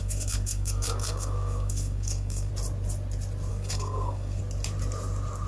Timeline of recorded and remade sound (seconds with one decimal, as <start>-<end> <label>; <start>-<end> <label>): 0.0-2.5 remade; 2.5-3.5 recorded; 3.5-4.4 remade; 4.4-5.5 recorded